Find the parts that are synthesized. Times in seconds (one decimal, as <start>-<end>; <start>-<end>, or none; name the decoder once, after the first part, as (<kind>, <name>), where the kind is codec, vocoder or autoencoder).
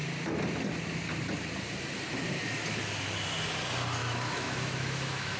4.0-5.4 (autoencoder, DAC-VAE)